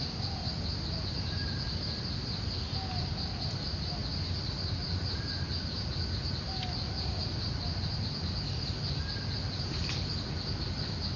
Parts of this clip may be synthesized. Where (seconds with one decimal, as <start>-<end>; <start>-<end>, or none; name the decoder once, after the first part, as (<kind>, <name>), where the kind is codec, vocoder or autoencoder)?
none

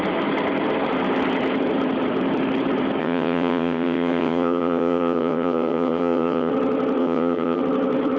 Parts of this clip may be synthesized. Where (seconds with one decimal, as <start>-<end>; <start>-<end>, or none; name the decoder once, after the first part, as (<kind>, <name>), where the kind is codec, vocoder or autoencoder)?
3.0-6.5 (vocoder, HiFi-GAN); 7.0-7.6

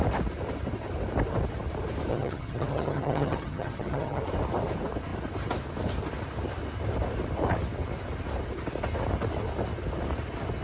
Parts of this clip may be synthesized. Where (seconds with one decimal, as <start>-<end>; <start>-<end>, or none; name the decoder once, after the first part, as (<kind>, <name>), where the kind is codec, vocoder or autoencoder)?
2.1-4.2 (vocoder, HiFi-GAN)

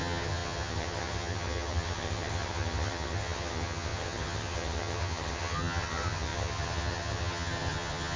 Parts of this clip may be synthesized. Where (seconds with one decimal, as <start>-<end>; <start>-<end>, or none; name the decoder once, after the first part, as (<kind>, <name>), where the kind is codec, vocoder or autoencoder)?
0.0-8.2 (vocoder, HiFi-GAN)

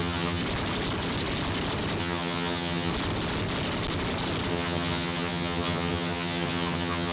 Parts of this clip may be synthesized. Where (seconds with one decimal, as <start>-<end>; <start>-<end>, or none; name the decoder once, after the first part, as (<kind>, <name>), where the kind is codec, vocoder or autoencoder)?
0.0-0.4 (vocoder, HiFi-GAN); 2.0-2.9; 4.5-7.1

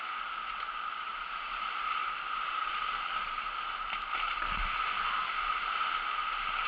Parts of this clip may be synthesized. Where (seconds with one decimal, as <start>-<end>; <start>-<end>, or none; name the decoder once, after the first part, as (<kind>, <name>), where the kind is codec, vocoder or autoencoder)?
none